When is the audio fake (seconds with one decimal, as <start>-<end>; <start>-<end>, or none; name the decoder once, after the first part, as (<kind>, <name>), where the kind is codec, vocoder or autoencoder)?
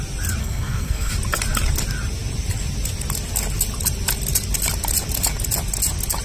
0.4-1.1 (codec, SNAC)